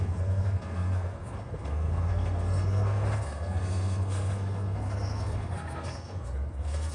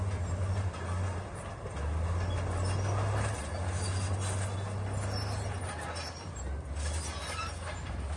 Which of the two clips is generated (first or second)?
first